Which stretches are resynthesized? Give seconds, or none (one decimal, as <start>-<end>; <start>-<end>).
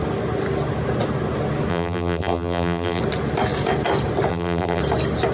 1.7-3.0; 4.3-4.8